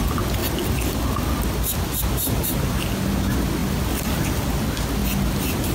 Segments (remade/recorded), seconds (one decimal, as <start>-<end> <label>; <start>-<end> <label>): 0.0-5.7 recorded